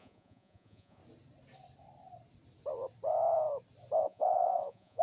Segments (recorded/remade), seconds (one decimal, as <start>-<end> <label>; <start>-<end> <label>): 0.0-1.0 remade; 1.0-4.0 recorded; 4.0-5.0 remade